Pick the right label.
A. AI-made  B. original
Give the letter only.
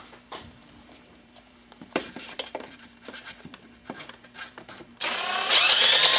A